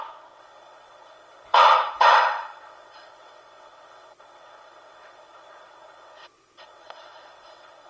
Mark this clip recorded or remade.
remade